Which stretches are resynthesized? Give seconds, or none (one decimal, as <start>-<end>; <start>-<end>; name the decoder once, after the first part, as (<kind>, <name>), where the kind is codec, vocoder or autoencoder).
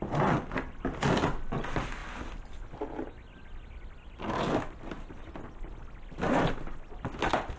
none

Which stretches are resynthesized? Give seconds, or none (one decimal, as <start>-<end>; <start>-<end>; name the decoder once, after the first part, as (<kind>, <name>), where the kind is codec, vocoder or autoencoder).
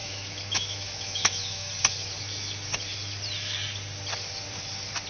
0.0-1.7 (autoencoder, DAC-VAE)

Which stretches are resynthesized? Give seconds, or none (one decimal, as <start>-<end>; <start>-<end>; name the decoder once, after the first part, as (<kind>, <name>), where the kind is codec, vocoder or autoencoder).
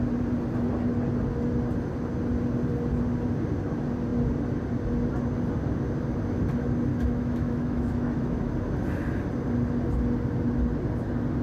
6.9-8.5 (autoencoder, DAC-VAE)